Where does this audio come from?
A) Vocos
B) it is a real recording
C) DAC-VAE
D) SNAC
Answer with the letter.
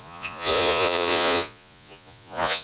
A